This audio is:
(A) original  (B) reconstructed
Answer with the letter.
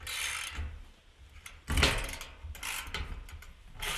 A